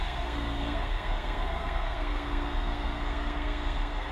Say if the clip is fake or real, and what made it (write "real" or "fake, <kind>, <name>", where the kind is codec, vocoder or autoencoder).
fake, codec, SNAC